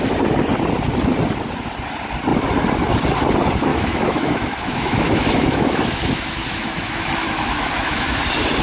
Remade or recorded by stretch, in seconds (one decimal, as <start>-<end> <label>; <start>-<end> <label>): 0.0-3.7 recorded; 3.7-8.2 remade; 8.2-8.6 recorded